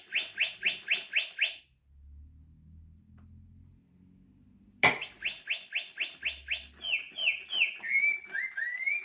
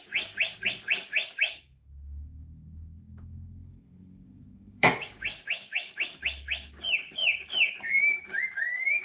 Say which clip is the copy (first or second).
second